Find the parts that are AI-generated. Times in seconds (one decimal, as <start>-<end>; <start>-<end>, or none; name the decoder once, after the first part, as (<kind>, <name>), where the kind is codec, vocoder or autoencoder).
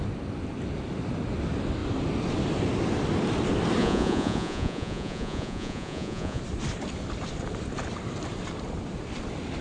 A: 3.8-6.4 (vocoder, Vocos)